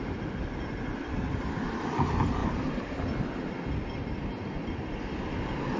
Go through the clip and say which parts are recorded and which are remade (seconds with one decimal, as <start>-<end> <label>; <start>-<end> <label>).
0.0-5.8 recorded